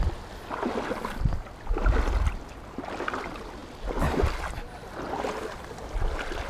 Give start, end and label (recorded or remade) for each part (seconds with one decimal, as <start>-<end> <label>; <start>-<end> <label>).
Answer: 0.0-6.5 recorded